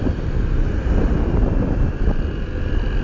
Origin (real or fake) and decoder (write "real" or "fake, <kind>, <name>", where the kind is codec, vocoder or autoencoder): real